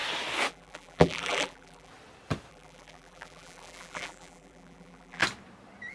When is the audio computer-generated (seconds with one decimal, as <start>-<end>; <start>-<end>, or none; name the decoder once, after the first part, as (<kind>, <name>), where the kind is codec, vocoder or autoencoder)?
0.5-1.9 (vocoder, BigVGAN v2); 2.5-5.2